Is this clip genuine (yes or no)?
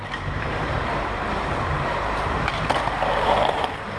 no